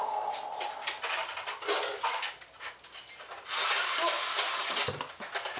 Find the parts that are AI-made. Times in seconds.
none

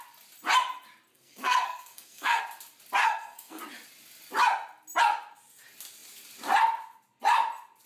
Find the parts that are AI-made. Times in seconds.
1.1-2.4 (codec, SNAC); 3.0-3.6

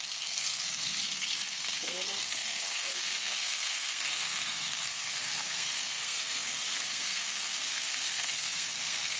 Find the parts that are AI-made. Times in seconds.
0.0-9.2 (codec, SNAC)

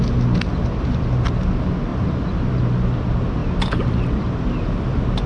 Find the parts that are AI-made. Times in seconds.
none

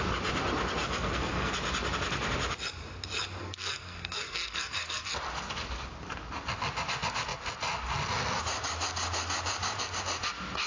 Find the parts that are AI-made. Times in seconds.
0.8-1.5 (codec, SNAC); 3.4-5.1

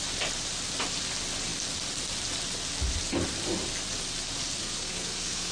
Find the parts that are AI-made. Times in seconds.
4.6-5.5 (codec, SNAC)